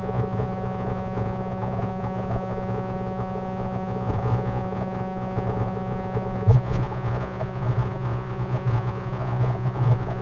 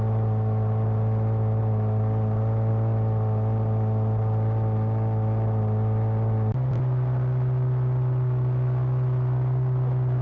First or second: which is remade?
first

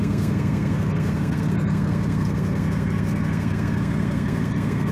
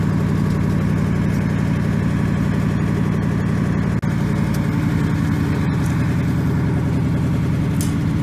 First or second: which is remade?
first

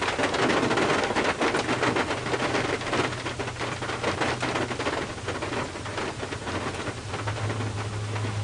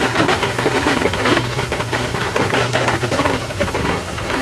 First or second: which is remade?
second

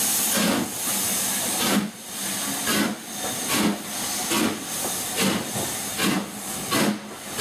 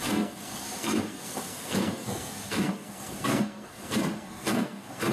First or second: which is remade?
second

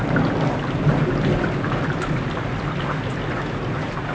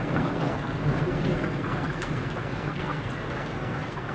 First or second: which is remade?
second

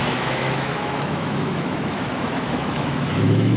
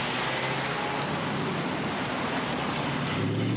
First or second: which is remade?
first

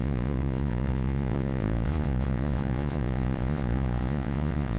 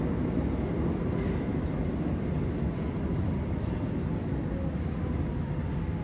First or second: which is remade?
first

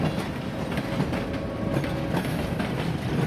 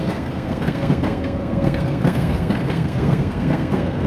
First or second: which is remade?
second